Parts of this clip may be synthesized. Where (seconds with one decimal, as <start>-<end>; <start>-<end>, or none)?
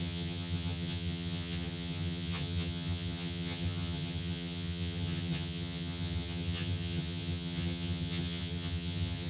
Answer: 0.0-9.3